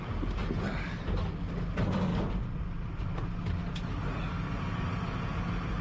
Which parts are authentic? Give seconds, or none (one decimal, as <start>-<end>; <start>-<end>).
0.0-5.8